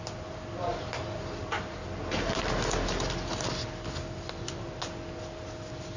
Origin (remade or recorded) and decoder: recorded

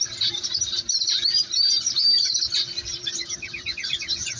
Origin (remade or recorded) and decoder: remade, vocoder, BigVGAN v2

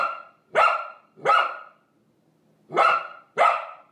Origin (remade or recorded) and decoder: recorded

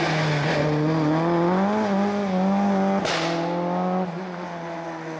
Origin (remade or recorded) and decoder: recorded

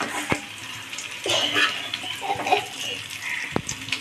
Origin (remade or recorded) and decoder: remade, vocoder, BigVGAN v2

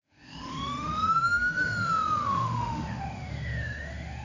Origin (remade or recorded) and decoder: remade, autoencoder, DAC-VAE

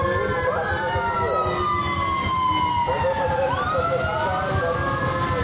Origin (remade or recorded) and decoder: recorded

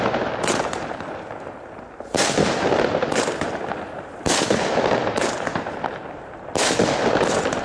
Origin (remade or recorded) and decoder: recorded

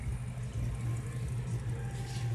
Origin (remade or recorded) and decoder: recorded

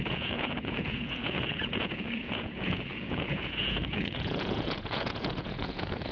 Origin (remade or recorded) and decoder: remade, vocoder, Vocos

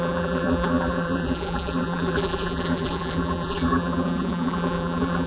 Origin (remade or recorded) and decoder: remade, vocoder, BigVGAN v2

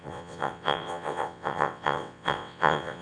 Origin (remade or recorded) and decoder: remade, vocoder, WaveNeXt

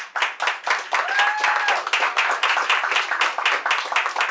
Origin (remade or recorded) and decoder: recorded